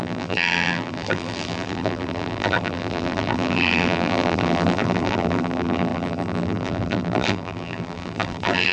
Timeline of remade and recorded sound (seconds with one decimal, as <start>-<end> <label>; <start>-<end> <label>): 0.0-8.7 remade